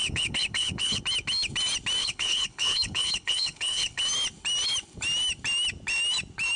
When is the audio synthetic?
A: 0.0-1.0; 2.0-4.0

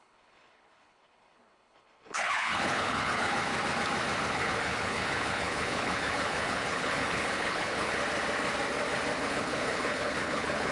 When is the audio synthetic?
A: 0.0-3.5; 4.3-8.0; 9.2-10.7

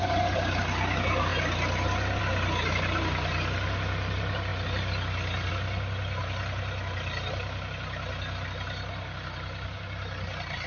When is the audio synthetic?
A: none